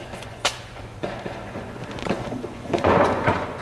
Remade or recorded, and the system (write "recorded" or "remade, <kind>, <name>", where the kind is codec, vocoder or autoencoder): remade, vocoder, Vocos